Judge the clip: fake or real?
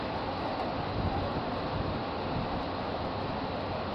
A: real